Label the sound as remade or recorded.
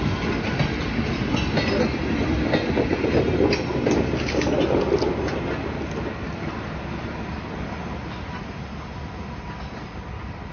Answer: recorded